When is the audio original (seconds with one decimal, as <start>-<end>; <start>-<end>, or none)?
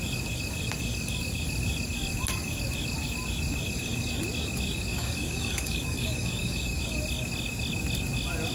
0.0-4.9; 6.8-8.5